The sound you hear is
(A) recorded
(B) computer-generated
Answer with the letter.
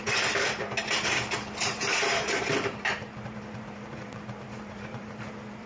B